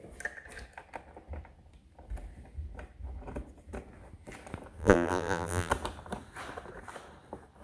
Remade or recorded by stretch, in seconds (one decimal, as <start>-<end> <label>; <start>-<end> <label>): 0.0-4.8 recorded; 4.8-5.7 remade; 5.7-7.6 recorded